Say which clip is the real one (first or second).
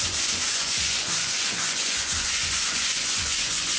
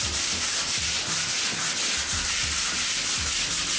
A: second